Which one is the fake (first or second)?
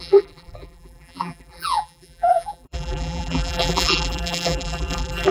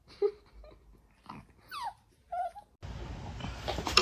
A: first